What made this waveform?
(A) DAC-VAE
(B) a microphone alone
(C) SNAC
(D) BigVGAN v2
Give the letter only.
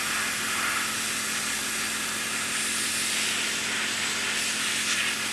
B